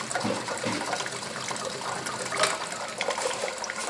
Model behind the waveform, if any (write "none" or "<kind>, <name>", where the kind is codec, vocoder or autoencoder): none